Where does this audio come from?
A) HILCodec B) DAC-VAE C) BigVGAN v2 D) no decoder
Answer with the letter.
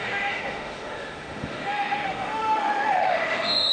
B